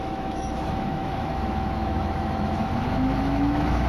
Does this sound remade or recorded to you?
remade